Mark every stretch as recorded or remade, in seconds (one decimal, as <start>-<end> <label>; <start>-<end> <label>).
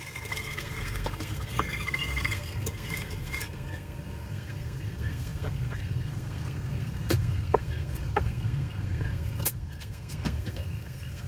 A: 0.0-11.3 remade